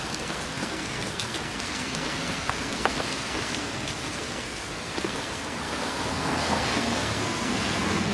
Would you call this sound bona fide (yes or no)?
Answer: no